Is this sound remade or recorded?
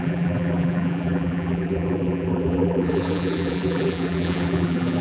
remade